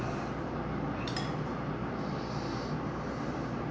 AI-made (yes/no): no